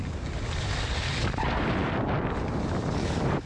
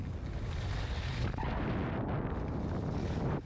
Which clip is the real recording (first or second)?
second